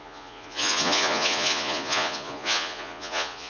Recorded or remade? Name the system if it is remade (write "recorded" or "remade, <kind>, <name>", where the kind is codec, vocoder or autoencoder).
remade, vocoder, Vocos